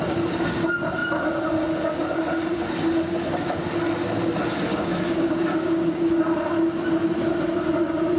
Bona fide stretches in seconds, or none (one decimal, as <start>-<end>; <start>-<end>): 0.0-4.7; 6.2-8.2

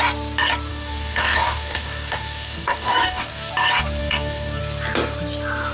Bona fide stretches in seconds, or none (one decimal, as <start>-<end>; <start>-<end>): 0.0-0.7; 3.5-4.0; 4.6-5.7

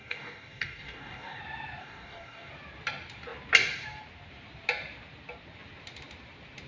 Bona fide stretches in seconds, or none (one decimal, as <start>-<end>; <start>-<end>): 1.4-1.8; 2.5-6.7

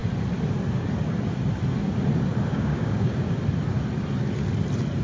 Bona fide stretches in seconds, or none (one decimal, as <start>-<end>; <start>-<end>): 0.0-2.5; 3.4-5.0

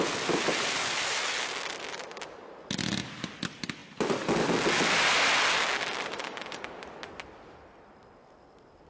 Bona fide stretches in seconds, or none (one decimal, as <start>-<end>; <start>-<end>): 0.0-8.9

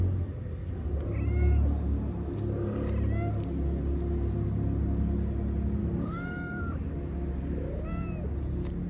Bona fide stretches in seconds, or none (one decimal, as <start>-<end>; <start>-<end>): 0.0-5.8; 6.6-8.9

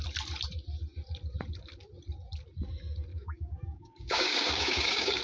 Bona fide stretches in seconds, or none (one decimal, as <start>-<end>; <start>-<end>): 0.0-3.1